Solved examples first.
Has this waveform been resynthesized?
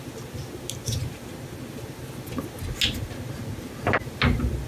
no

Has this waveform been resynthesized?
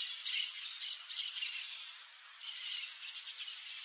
no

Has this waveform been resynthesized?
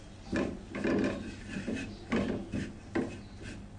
no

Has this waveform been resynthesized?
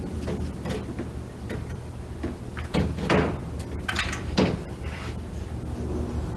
no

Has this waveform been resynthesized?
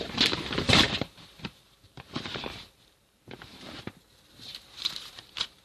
yes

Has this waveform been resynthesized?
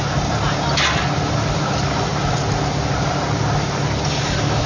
no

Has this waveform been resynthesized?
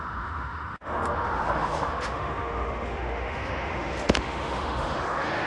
yes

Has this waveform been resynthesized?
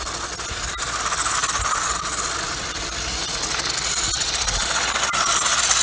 no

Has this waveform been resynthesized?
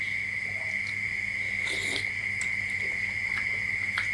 no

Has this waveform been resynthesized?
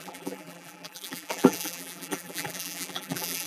yes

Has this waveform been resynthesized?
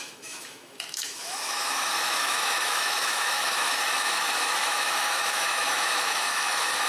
yes